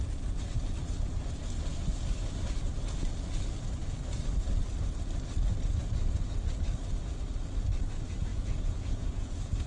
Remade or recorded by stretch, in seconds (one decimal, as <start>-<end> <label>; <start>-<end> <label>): 0.0-8.3 recorded; 8.3-9.7 remade